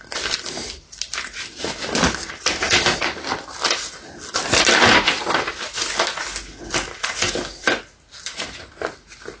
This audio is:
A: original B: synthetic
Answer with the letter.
A